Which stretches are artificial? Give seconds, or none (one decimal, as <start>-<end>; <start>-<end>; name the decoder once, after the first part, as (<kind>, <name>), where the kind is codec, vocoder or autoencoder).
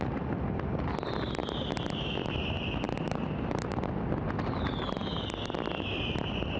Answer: none